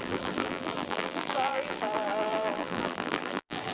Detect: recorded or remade remade